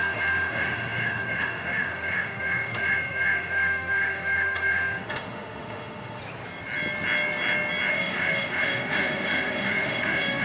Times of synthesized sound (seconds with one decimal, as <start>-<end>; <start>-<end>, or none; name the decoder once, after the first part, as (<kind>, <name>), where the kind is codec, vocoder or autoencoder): 0.0-6.2 (autoencoder, DAC-VAE); 7.9-10.4